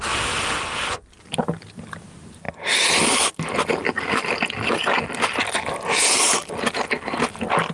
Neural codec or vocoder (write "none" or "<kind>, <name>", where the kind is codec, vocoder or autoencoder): none